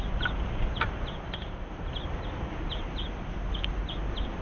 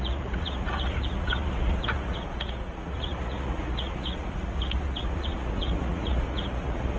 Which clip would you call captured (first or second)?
first